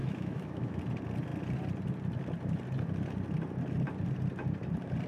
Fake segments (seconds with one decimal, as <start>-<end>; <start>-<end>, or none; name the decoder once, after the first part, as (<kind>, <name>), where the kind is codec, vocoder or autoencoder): 0.0-0.8 (autoencoder, DAC-VAE)